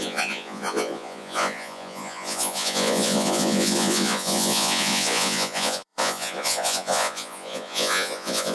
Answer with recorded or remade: remade